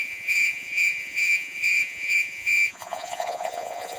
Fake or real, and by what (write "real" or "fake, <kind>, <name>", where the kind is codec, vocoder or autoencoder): fake, vocoder, Vocos